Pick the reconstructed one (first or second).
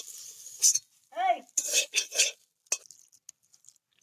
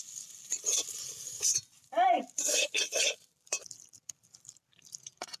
second